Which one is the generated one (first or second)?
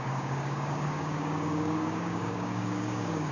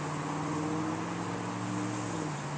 first